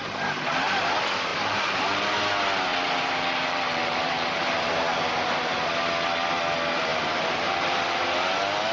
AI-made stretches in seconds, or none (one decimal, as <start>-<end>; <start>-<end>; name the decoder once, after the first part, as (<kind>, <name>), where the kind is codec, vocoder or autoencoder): 1.3-2.1 (vocoder, BigVGAN v2); 2.7-5.7; 6.9-8.0